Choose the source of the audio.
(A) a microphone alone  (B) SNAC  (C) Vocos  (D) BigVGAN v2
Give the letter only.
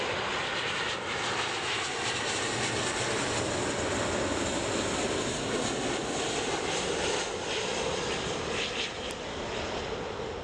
A